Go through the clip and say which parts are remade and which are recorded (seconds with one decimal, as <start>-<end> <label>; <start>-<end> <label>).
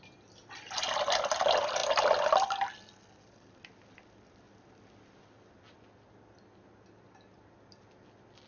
0.0-8.5 recorded